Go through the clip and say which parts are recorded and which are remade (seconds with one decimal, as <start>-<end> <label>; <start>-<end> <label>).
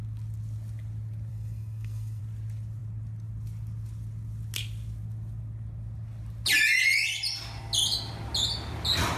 0.0-1.3 recorded; 1.3-2.2 remade; 2.2-9.2 recorded